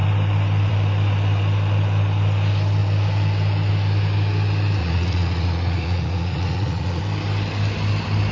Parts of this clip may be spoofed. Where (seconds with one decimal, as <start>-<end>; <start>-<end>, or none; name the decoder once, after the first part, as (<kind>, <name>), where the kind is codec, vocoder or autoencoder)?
4.8-7.0 (vocoder, Vocos)